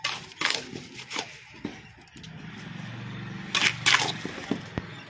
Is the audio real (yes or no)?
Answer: yes